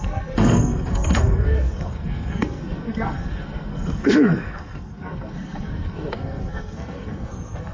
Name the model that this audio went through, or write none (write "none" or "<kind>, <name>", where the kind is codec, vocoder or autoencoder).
codec, SNAC